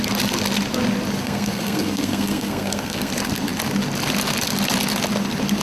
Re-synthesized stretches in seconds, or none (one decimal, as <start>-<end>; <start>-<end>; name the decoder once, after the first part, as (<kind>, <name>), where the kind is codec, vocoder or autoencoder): 1.2-3.1 (codec, SNAC)